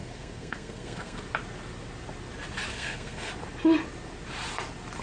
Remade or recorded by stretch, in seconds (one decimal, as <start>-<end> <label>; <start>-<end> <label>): 0.0-1.2 remade; 1.2-2.7 recorded; 2.7-3.3 remade; 3.3-5.0 recorded